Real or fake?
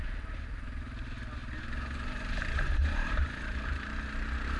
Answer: real